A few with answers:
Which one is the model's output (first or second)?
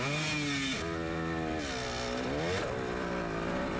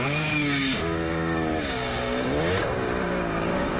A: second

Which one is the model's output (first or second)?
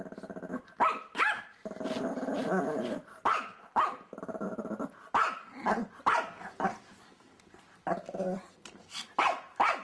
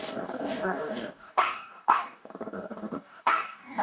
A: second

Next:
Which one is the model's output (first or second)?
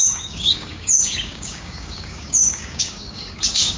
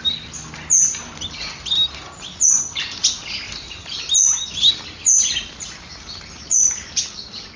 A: first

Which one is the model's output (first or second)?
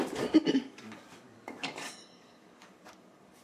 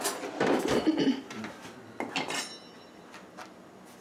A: first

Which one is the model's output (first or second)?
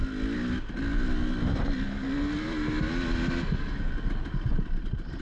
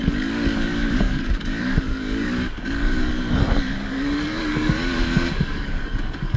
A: second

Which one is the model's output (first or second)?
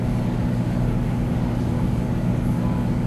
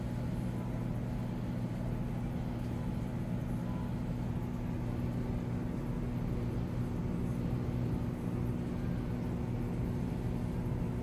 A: first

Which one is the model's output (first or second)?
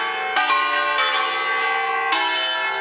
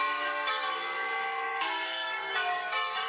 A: second